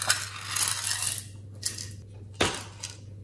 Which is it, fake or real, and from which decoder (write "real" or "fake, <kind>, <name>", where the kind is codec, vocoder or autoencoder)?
real